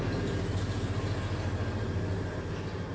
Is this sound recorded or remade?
recorded